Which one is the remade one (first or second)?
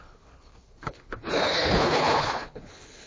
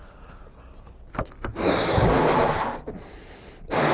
first